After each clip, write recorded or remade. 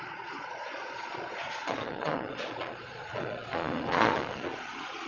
remade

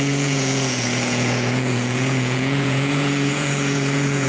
remade